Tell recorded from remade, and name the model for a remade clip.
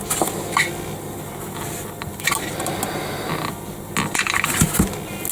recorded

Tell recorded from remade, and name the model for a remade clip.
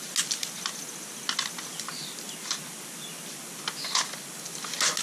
recorded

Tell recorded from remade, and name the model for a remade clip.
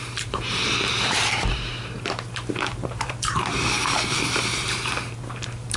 remade, vocoder, BigVGAN v2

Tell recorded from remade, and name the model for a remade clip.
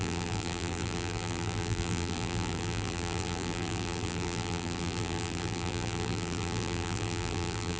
remade, vocoder, BigVGAN v2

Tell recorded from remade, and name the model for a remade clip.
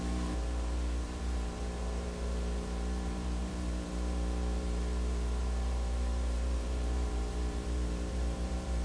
remade, vocoder, BigVGAN v2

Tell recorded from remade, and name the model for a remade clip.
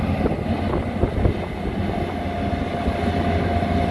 recorded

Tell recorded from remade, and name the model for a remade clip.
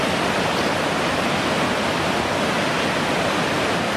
recorded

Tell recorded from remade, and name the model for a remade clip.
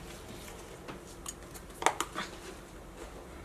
recorded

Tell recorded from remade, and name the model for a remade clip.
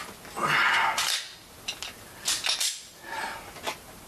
recorded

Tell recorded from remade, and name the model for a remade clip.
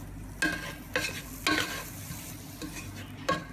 recorded